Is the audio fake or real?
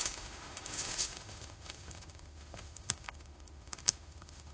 fake